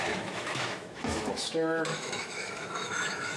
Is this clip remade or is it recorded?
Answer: remade